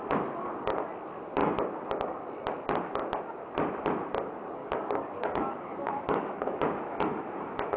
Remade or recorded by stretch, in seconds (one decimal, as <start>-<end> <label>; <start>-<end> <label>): 0.0-4.6 recorded; 4.6-6.6 remade; 6.6-7.8 recorded

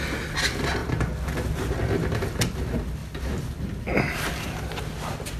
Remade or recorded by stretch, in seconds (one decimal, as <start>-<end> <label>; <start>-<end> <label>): 0.0-5.4 recorded

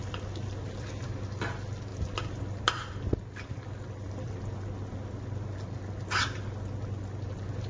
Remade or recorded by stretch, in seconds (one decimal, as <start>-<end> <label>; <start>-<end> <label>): 0.0-7.7 recorded

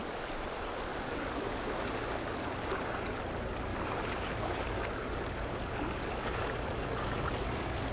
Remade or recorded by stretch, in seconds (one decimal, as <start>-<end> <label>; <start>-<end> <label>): 0.0-0.9 recorded; 0.9-1.9 remade; 1.9-3.7 recorded; 3.7-7.9 remade